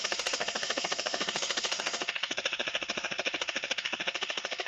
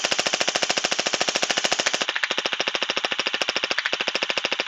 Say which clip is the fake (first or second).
first